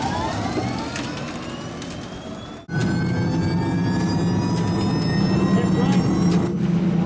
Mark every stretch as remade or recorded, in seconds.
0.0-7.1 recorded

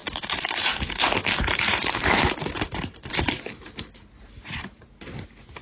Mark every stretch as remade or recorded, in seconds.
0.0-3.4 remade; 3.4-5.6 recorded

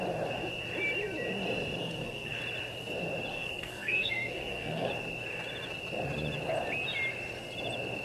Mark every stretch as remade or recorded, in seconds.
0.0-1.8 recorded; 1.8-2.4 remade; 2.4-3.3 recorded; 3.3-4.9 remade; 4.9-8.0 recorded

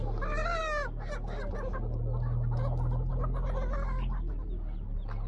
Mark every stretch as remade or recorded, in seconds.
0.0-5.3 recorded

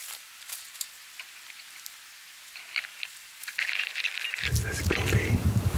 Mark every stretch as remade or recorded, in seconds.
0.0-0.9 remade; 0.9-2.9 recorded; 2.9-3.9 remade; 3.9-4.6 recorded; 4.6-5.8 remade

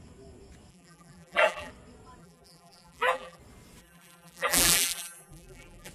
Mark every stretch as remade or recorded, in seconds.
0.0-0.7 recorded; 0.7-1.7 remade; 1.7-2.2 recorded; 2.2-3.4 remade; 3.4-3.8 recorded; 3.8-5.9 remade

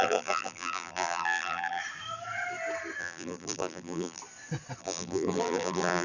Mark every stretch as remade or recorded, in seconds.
0.0-1.8 remade; 1.8-3.0 recorded; 3.0-4.2 remade; 4.2-4.8 recorded; 4.8-6.0 remade